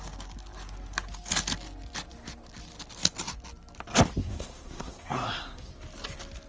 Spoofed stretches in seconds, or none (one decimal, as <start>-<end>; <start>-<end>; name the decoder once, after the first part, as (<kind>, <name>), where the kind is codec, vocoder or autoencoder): 4.2-5.7 (codec, SNAC)